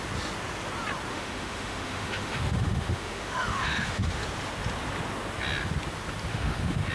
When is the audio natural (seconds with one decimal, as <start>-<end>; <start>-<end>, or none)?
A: 0.0-1.1; 4.2-6.3